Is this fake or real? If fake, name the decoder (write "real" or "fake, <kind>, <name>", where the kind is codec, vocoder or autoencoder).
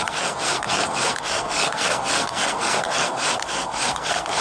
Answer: fake, codec, SNAC